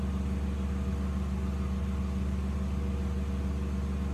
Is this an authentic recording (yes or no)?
yes